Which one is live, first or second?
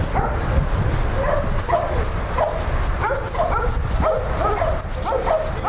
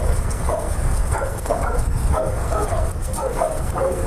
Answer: first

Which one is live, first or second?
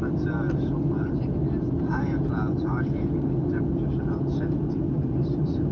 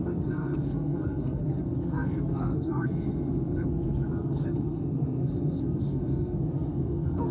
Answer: first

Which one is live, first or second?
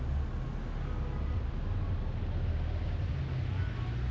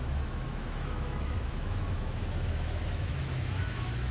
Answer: first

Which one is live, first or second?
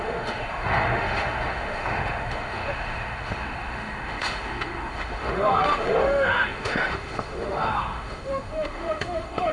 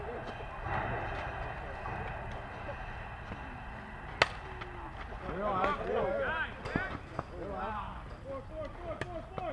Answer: second